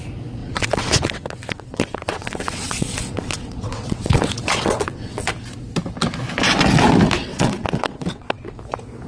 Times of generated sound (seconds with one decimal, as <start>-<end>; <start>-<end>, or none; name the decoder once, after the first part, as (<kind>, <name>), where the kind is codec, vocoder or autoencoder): 0.4-5.3 (vocoder, WaveNeXt); 7.3-8.6